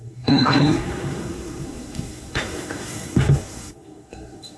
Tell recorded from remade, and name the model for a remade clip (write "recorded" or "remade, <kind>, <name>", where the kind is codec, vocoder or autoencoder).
remade, codec, SNAC